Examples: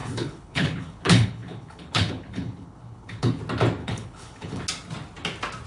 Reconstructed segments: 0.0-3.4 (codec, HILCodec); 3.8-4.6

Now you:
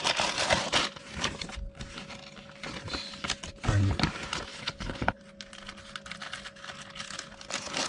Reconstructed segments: 4.5-5.2 (codec, HILCodec)

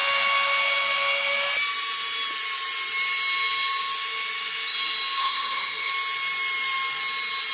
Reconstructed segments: 5.2-5.9 (codec, HILCodec)